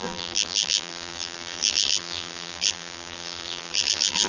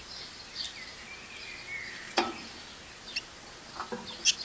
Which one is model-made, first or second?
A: first